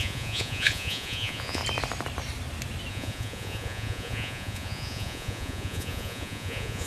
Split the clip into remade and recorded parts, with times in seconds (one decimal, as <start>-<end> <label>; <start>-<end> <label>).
0.0-1.6 remade; 1.6-2.9 recorded; 2.9-6.9 remade